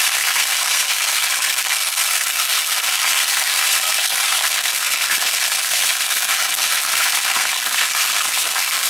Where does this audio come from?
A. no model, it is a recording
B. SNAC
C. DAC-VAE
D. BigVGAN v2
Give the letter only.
B